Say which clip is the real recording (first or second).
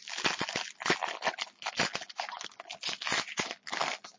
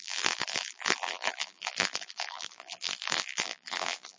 first